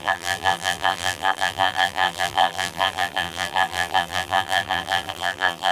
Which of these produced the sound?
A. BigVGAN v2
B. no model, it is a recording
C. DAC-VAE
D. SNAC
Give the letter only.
A